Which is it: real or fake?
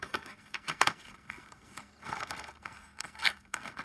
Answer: fake